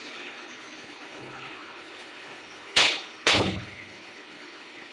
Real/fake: fake